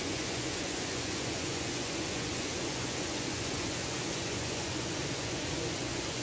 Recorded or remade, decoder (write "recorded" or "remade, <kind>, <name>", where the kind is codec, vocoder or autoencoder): remade, vocoder, Vocos